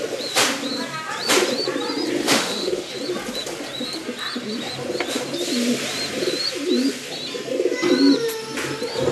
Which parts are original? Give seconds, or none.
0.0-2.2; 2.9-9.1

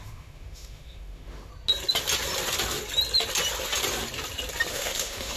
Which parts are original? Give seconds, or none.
1.5-4.7

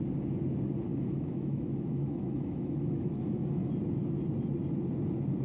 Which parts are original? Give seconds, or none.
0.0-0.9; 3.7-5.4

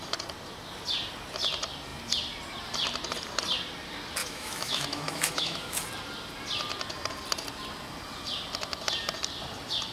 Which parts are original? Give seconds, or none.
0.0-4.2; 5.8-9.9

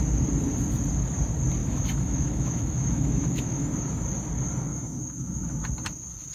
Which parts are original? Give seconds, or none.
0.0-1.6; 3.7-4.7; 5.6-6.3

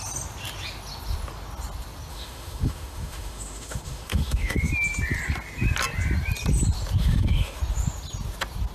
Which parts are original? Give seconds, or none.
0.0-2.1; 4.7-7.0; 7.6-8.7

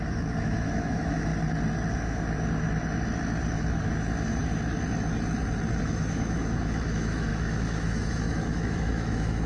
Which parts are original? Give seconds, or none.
1.3-5.8